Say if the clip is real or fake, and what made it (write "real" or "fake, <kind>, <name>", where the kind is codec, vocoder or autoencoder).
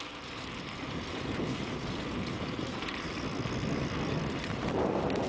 real